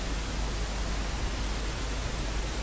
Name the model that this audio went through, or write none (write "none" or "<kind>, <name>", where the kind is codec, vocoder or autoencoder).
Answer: none